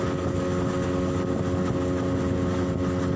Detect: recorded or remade recorded